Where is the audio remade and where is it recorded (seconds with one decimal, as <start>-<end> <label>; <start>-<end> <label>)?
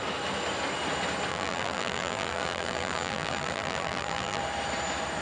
0.0-1.3 recorded; 1.3-4.4 remade; 4.4-5.2 recorded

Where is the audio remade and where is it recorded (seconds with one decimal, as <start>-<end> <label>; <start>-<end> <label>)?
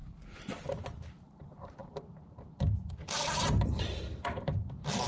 0.0-1.8 remade; 1.8-3.6 recorded; 3.6-5.1 remade